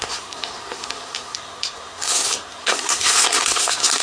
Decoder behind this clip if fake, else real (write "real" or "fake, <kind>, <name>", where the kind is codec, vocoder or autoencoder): fake, codec, SNAC